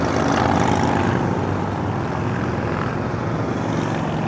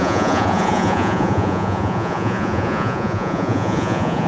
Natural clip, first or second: first